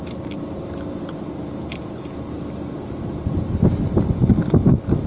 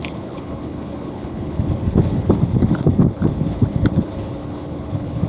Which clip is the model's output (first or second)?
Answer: second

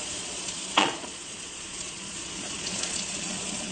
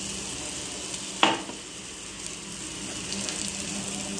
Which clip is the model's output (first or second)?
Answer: first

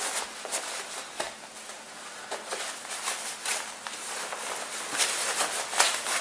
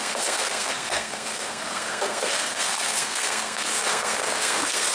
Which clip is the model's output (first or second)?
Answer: second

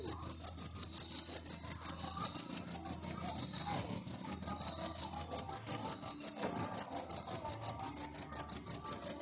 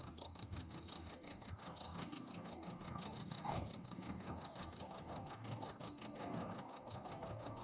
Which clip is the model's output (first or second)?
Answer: second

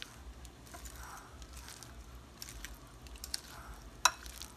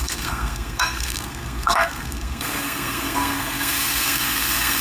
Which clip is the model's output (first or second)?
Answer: second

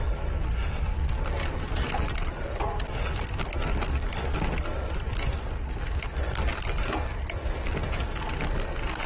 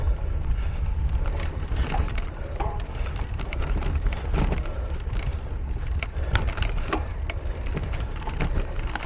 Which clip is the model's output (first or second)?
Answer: second